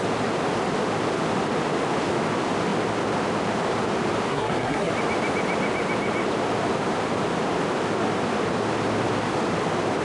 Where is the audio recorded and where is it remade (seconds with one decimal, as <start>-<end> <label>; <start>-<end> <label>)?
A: 0.0-4.3 recorded; 4.3-4.9 remade; 4.9-10.0 recorded